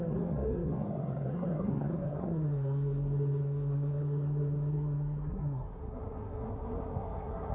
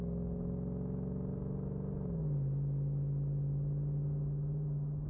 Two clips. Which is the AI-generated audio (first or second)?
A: first